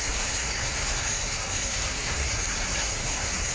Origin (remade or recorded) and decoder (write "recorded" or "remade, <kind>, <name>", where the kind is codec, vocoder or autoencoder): remade, codec, SNAC